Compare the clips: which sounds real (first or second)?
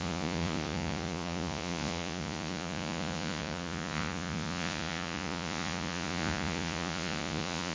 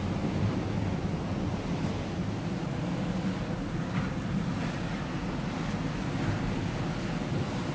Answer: second